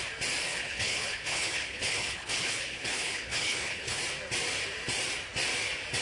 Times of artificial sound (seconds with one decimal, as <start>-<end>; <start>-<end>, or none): 0.4-4.0